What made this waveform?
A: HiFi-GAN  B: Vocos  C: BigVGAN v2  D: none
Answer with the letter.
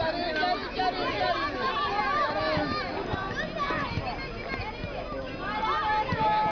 D